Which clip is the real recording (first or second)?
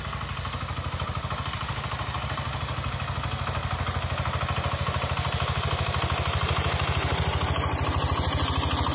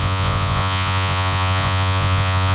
first